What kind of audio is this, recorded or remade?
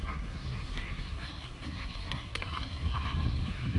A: remade